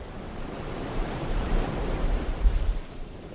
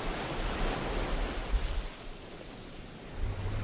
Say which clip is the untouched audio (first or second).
second